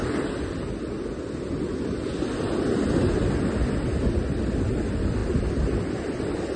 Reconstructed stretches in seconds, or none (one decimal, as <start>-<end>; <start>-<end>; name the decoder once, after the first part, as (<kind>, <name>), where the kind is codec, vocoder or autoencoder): none